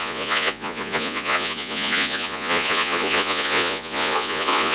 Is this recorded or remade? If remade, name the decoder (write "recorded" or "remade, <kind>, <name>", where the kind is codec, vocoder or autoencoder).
remade, vocoder, Vocos